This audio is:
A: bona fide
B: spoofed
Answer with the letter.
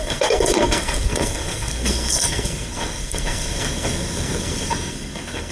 B